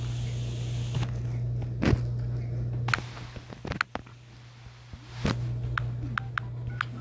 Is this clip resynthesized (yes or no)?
no